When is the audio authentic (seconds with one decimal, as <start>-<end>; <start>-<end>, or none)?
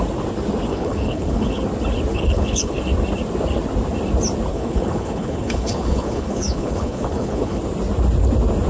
0.0-0.7; 1.6-2.1; 2.8-4.5; 7.6-8.7